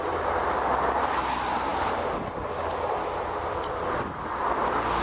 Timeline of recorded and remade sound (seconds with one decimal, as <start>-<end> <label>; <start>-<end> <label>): 0.0-5.0 recorded